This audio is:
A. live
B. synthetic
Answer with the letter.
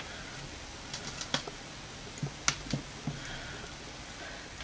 A